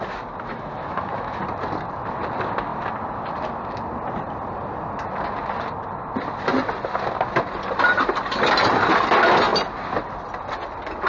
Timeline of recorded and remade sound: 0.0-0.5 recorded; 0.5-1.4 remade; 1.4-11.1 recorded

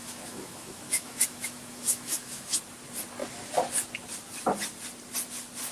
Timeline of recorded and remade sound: 0.0-2.6 remade; 2.6-5.7 recorded

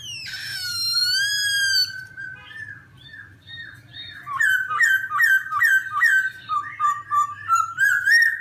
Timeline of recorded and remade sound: 0.0-0.4 recorded; 0.4-1.3 remade; 1.3-8.4 recorded